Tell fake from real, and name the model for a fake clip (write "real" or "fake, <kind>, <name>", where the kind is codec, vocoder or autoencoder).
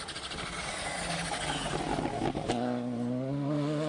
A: real